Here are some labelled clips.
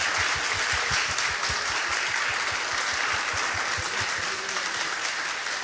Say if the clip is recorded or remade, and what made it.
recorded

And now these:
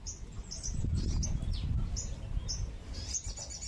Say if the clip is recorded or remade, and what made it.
recorded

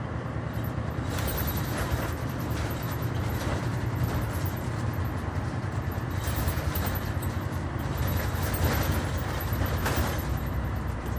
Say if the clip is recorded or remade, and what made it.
remade, vocoder, BigVGAN v2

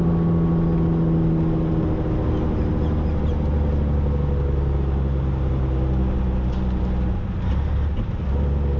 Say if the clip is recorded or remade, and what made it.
recorded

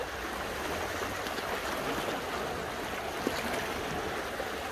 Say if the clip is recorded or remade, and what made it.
recorded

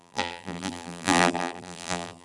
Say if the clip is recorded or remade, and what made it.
remade, vocoder, BigVGAN v2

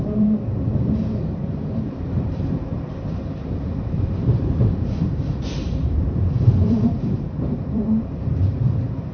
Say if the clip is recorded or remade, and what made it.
remade, vocoder, BigVGAN v2